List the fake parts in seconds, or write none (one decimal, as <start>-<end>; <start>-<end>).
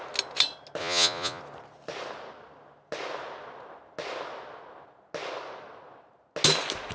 0.8-1.4